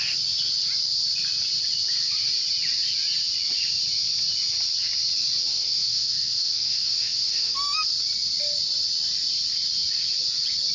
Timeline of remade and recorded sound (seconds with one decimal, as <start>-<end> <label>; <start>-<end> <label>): 0.0-5.5 recorded; 5.5-7.9 remade; 7.9-10.7 recorded